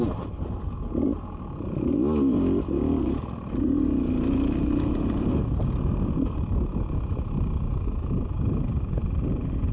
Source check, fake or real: real